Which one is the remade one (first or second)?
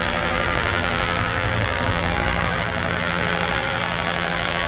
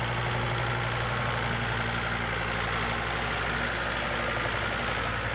first